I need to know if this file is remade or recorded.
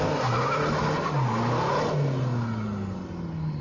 recorded